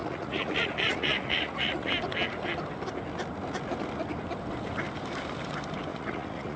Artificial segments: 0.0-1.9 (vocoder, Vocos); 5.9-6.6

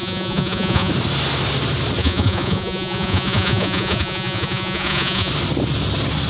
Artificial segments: 0.0-0.9 (vocoder, Vocos); 2.0-5.3

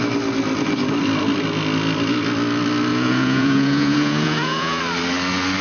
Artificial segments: 2.9-4.8 (vocoder, Vocos)

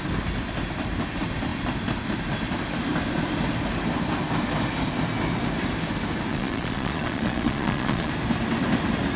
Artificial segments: 6.3-8.1 (vocoder, Vocos)